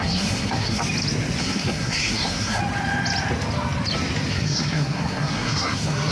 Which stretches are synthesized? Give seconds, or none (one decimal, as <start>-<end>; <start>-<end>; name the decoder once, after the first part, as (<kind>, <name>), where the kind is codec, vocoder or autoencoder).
0.0-0.8 (codec, SNAC); 1.4-2.6; 4.3-6.1